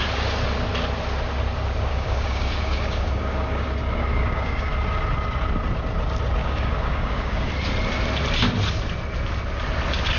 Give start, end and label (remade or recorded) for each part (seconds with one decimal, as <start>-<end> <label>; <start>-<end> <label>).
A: 0.0-1.9 recorded; 1.9-4.7 remade; 4.7-6.4 recorded; 6.4-7.5 remade; 7.5-10.2 recorded